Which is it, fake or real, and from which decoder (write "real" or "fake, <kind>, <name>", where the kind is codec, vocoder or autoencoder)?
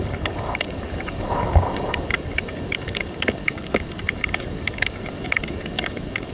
fake, codec, DAC